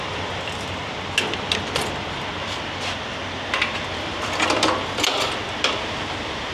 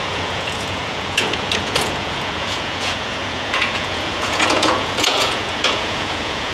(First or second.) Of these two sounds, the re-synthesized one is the second